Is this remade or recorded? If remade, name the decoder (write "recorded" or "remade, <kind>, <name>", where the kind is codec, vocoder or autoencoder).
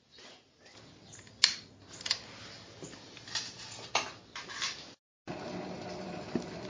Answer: recorded